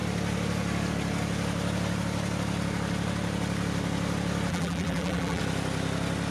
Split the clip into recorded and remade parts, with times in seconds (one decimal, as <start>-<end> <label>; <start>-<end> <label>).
0.0-4.5 recorded; 4.5-5.4 remade; 5.4-6.3 recorded

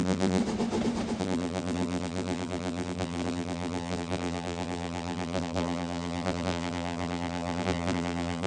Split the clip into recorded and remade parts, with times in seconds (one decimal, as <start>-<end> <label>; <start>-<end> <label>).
0.0-0.4 remade; 0.4-1.2 recorded; 1.2-8.5 remade

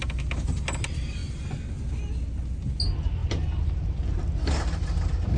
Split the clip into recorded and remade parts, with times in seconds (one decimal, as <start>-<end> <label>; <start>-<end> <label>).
0.0-5.4 recorded

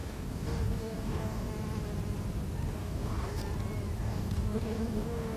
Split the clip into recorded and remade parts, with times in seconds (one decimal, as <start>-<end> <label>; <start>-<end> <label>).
0.0-1.5 remade; 1.5-2.7 recorded; 2.7-3.4 remade; 3.4-4.0 recorded; 4.0-5.4 remade